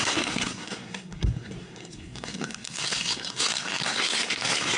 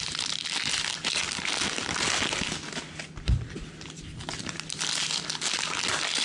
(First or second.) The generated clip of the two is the first